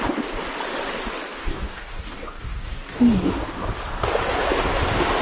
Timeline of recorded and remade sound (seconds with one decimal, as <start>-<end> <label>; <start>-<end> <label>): 0.0-1.4 recorded; 1.4-3.3 remade; 3.3-5.2 recorded

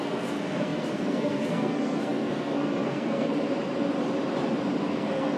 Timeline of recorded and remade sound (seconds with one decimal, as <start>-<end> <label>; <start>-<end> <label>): 0.0-3.3 remade; 3.3-4.9 recorded; 4.9-5.4 remade

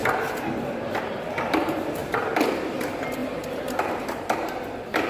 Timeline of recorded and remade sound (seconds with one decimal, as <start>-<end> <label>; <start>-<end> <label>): 0.0-5.1 recorded

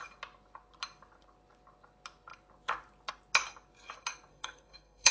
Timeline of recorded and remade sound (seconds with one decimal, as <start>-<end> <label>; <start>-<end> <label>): 0.0-4.3 recorded; 4.3-5.1 remade

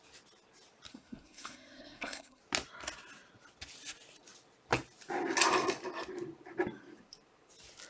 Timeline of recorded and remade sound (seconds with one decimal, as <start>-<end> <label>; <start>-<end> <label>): 0.0-0.9 recorded; 0.9-2.4 remade; 2.4-7.9 recorded

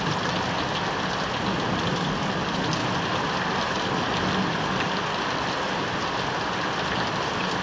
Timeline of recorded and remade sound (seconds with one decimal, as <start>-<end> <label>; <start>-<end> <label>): 0.0-7.6 recorded

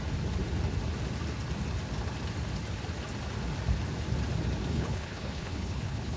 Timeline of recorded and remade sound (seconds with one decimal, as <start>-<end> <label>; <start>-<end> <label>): 0.0-4.7 recorded; 4.7-6.2 remade

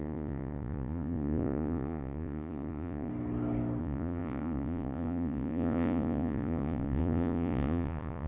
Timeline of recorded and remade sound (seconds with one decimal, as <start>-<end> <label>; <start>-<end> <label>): 0.0-3.1 remade; 3.1-3.8 recorded; 3.8-8.3 remade